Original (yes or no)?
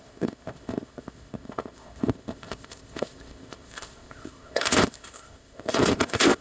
no